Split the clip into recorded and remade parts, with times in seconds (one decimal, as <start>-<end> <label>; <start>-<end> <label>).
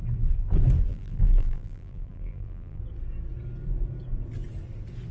0.0-0.9 recorded; 0.9-2.8 remade; 2.8-5.1 recorded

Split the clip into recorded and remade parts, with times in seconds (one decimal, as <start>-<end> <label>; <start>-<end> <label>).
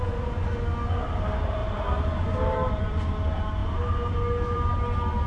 0.0-1.6 recorded; 1.6-2.9 remade; 2.9-3.6 recorded; 3.6-4.7 remade; 4.7-5.3 recorded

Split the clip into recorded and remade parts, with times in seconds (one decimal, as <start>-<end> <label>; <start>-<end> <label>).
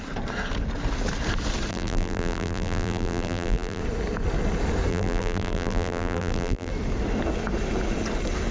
0.0-1.7 recorded; 1.7-3.8 remade; 3.8-4.9 recorded; 4.9-6.7 remade; 6.7-8.5 recorded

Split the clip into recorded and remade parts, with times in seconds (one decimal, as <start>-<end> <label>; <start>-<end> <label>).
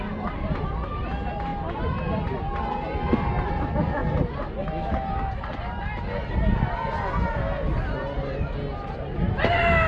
0.0-1.5 recorded; 1.5-3.5 remade; 3.5-9.9 recorded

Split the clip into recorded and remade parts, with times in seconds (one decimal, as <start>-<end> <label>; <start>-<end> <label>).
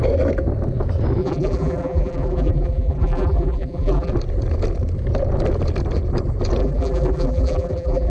0.0-1.2 recorded; 1.2-4.1 remade; 4.1-6.6 recorded; 6.6-8.1 remade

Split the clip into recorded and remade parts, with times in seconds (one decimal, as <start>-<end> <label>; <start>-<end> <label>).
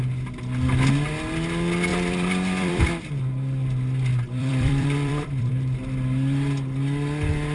0.0-1.9 recorded; 1.9-3.1 remade; 3.1-4.1 recorded; 4.1-5.5 remade; 5.5-7.5 recorded